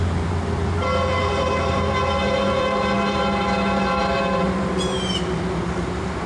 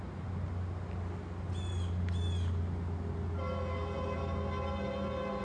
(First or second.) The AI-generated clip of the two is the first